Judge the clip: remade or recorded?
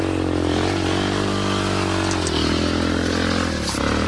recorded